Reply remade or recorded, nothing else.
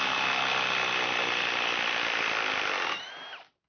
recorded